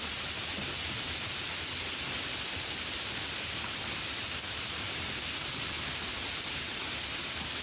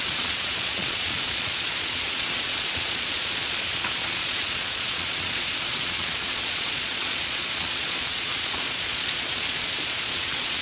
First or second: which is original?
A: first